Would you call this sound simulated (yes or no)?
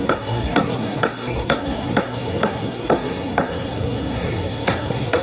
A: yes